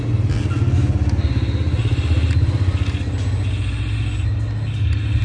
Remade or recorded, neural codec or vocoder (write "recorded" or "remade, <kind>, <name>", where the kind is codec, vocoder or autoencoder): recorded